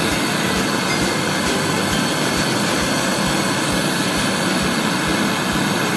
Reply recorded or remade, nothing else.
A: recorded